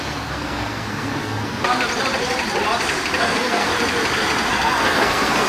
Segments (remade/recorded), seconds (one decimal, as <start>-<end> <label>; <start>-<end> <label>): 0.0-1.6 remade; 1.6-3.2 recorded; 3.2-3.7 remade; 3.7-4.5 recorded; 4.5-5.5 remade